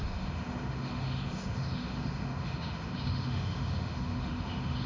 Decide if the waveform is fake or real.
fake